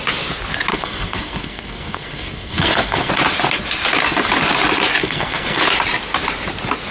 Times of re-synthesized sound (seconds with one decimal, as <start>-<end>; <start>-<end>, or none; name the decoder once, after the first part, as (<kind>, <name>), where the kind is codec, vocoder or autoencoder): 0.7-3.1 (codec, SNAC); 5.0-5.6